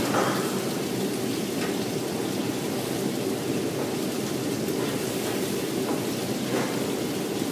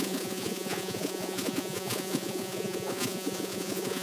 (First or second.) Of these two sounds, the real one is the first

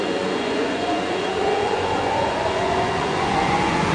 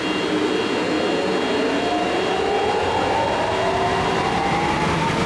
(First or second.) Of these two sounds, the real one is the second